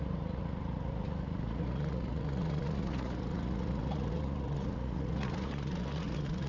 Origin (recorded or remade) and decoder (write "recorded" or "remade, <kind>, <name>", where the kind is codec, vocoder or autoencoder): remade, vocoder, Vocos